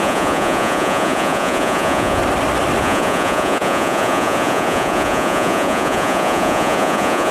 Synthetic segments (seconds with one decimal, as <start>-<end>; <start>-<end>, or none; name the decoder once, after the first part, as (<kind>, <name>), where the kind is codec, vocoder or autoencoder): 0.0-2.2 (vocoder, Vocos); 2.8-7.3

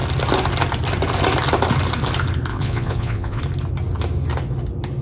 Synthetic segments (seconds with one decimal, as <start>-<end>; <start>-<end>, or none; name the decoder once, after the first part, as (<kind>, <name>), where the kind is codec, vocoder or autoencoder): 2.5-3.4 (vocoder, Vocos)

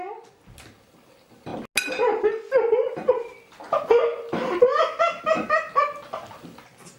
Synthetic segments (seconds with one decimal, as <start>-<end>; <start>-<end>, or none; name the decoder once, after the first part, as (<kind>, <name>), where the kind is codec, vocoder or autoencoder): none

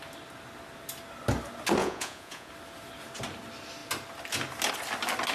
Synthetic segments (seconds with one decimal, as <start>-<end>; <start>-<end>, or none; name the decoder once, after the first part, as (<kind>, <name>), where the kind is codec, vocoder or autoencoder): 1.8-2.5 (vocoder, Vocos)

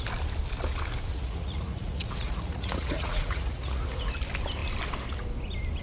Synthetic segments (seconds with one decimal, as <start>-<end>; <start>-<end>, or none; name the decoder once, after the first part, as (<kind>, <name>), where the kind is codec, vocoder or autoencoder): 1.1-4.1 (vocoder, Vocos)

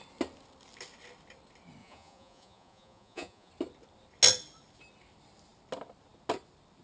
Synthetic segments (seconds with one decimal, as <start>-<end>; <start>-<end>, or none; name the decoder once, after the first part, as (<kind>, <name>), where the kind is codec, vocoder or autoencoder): 1.8-3.5 (vocoder, Vocos)